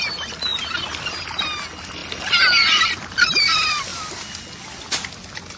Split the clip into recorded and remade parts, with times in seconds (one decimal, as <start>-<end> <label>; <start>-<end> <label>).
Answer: 0.0-5.6 recorded